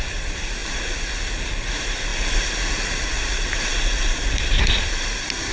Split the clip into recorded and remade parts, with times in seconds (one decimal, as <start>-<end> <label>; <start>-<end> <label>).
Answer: 0.0-5.5 recorded